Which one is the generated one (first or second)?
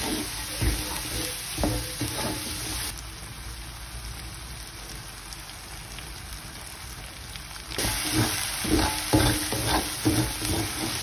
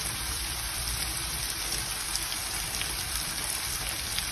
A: second